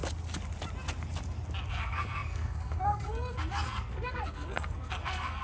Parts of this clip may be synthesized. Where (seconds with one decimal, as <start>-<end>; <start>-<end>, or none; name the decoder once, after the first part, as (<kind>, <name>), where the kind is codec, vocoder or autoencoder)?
1.7-5.4 (codec, SNAC)